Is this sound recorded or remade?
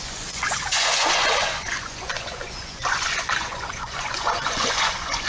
remade